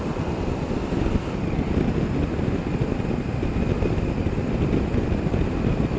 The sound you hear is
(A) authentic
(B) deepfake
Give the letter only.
A